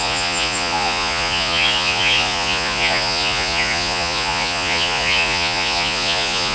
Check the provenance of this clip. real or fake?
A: fake